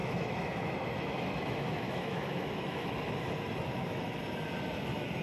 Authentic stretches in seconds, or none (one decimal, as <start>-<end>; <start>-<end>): 3.1-3.7; 4.2-5.2

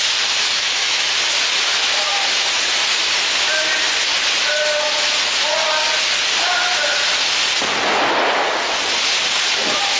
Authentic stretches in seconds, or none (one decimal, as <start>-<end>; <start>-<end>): 0.0-0.5; 1.1-10.0

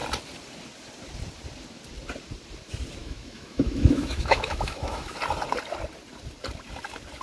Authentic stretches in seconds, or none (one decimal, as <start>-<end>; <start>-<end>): 0.0-3.0; 5.2-7.2